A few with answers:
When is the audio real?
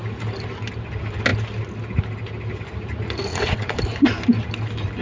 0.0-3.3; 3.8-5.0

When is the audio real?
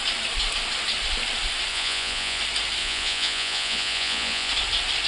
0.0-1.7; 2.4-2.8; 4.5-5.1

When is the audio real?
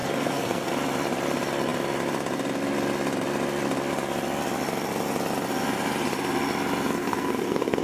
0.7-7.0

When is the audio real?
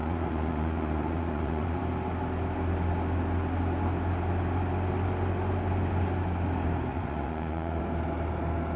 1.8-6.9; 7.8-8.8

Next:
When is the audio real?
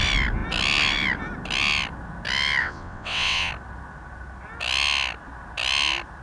0.0-2.6; 3.5-6.2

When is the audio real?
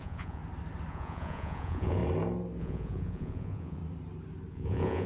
0.4-0.9; 2.0-2.6; 3.8-4.5